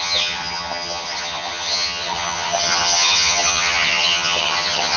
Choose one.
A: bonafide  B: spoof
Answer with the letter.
B